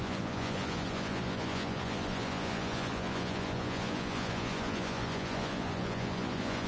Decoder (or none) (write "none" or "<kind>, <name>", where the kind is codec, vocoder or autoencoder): vocoder, Vocos